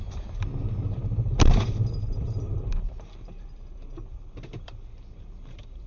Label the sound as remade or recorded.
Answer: remade